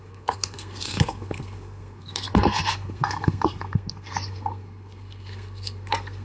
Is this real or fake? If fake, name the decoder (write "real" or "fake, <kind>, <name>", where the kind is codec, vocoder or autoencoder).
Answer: fake, codec, SNAC